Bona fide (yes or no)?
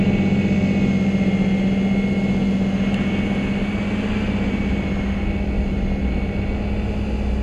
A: yes